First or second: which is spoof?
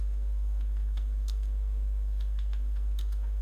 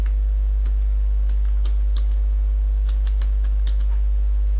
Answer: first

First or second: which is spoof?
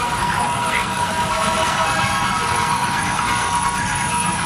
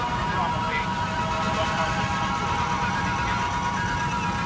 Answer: first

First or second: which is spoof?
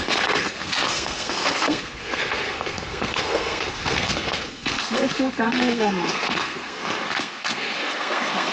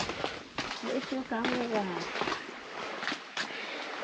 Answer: first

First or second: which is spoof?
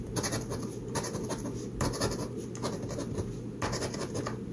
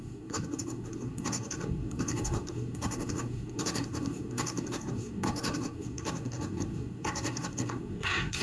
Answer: second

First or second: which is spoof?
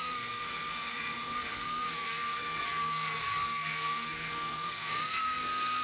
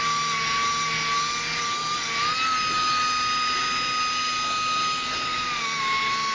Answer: first